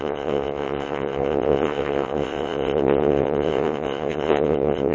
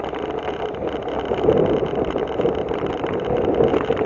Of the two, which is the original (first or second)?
second